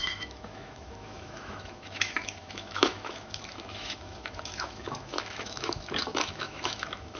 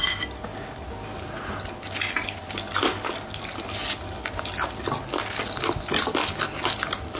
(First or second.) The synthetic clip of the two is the first